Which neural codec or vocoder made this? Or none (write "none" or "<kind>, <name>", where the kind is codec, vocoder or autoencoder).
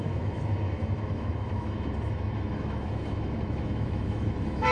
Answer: autoencoder, DAC-VAE